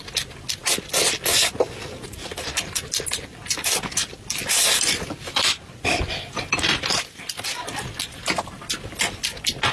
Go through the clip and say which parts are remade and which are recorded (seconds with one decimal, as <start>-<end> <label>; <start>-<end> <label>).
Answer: 0.0-9.7 recorded